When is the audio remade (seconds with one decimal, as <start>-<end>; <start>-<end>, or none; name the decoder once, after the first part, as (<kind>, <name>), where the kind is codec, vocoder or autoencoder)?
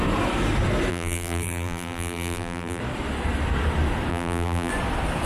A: 0.9-2.8 (vocoder, BigVGAN v2); 4.1-4.7